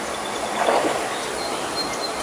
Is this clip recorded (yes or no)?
yes